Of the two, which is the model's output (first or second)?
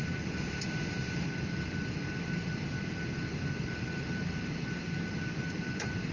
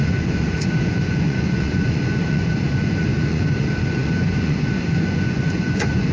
second